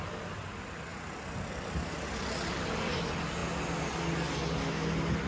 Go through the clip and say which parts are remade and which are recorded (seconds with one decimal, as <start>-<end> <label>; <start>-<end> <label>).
0.0-5.3 recorded